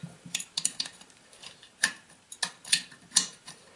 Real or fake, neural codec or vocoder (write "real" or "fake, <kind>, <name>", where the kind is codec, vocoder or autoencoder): fake, vocoder, BigVGAN v2